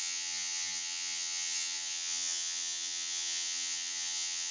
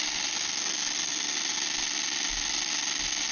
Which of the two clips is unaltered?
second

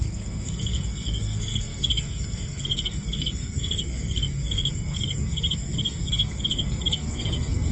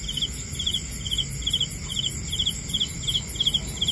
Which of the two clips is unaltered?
second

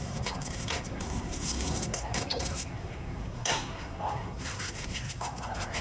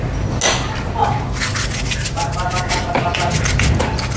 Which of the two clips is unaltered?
second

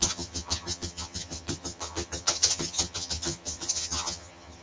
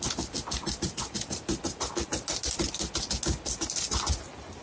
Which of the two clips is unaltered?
second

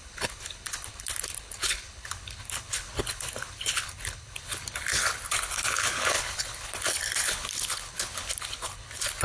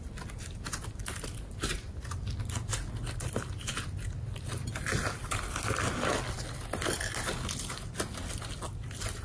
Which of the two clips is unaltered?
second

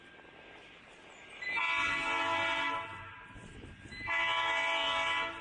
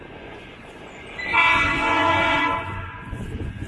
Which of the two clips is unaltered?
first